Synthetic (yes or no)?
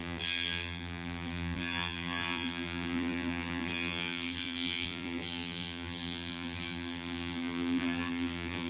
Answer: yes